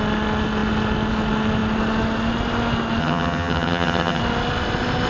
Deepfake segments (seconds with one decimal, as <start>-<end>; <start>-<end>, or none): 3.0-4.2